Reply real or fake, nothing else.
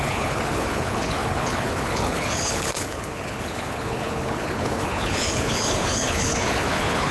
fake